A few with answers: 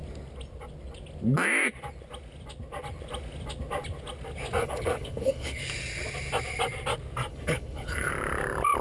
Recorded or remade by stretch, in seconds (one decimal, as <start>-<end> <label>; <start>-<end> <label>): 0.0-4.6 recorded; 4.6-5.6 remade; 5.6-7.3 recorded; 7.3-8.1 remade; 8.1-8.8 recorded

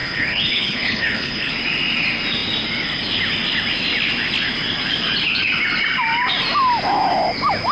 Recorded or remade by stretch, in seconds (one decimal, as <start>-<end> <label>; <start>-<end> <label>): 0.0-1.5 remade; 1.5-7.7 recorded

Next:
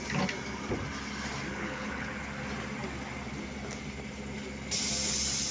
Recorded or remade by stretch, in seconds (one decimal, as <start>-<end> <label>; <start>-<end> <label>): 0.0-1.5 recorded; 1.5-2.1 remade; 2.1-5.5 recorded

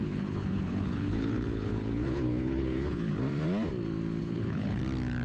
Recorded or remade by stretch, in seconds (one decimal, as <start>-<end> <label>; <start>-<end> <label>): 0.0-3.1 remade; 3.1-4.2 recorded; 4.2-4.8 remade; 4.8-5.2 recorded

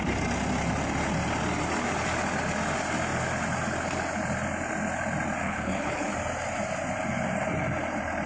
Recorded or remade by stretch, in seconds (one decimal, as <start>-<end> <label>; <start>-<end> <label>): 0.0-5.4 recorded; 5.4-6.1 remade; 6.1-8.3 recorded

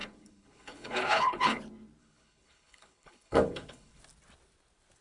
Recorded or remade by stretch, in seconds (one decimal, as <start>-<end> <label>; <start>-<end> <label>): 0.0-1.6 remade; 1.6-2.0 recorded; 2.0-4.0 remade; 4.0-5.0 recorded